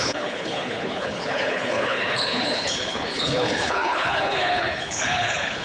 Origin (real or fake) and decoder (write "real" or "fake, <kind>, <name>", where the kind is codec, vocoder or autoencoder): fake, codec, HILCodec